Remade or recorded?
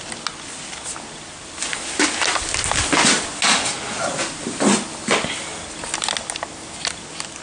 recorded